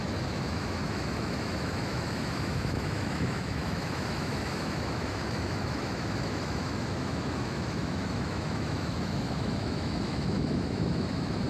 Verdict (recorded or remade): remade